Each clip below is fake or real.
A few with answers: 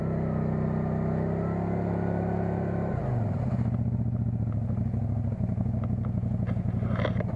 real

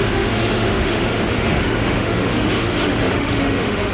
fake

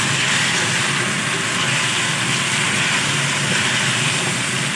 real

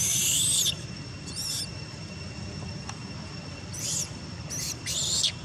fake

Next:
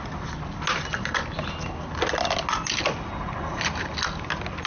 real